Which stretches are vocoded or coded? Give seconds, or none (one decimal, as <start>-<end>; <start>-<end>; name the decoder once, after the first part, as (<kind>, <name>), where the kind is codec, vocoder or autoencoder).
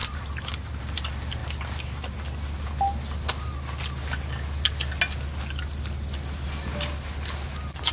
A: 0.0-0.8 (vocoder, BigVGAN v2)